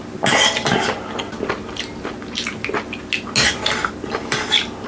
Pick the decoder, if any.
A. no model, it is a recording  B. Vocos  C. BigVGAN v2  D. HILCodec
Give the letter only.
A